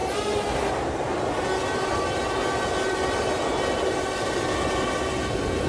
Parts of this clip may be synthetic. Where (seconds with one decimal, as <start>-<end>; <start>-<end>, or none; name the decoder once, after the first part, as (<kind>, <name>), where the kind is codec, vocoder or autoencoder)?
none

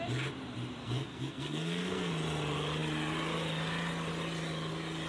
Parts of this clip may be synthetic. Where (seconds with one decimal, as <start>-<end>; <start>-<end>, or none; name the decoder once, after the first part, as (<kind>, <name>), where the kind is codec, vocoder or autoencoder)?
0.8-2.1 (codec, SNAC)

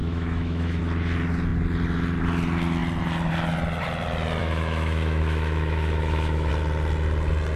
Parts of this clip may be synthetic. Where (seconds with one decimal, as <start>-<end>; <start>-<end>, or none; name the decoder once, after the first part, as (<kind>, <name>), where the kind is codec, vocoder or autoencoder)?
0.0-0.8 (autoencoder, DAC-VAE); 4.4-6.5

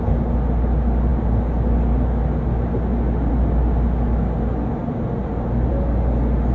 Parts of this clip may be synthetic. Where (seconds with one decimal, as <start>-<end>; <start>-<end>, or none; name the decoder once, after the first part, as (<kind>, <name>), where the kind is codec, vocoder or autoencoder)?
none

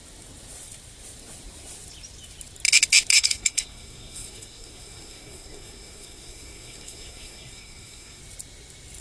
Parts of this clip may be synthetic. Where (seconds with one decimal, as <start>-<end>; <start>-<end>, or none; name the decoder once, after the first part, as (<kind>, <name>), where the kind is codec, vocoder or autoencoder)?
3.1-8.2 (codec, SNAC)